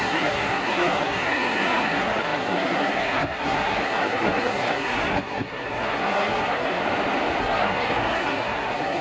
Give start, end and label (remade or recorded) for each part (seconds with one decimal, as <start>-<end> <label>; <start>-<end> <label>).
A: 0.0-6.8 remade; 6.8-7.4 recorded; 7.4-9.0 remade